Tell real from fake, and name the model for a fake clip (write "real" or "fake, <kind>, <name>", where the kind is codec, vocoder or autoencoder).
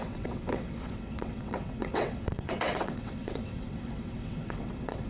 fake, vocoder, WaveNeXt